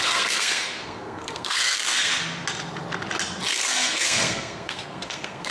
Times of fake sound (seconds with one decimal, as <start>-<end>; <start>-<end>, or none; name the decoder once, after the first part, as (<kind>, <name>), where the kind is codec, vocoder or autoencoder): 0.0-2.1 (codec, SNAC); 3.5-5.5